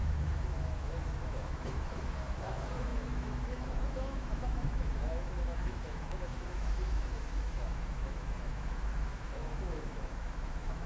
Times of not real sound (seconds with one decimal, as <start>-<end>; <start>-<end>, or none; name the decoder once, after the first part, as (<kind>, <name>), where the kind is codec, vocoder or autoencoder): 0.0-10.9 (autoencoder, DAC-VAE)